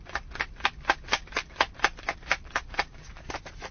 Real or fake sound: real